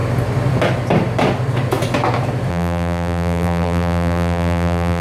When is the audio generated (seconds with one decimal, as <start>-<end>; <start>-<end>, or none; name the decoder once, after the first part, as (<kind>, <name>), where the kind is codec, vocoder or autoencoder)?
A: 2.5-5.0 (vocoder, BigVGAN v2)